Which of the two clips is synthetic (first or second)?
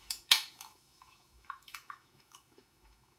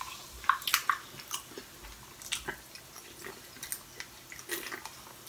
first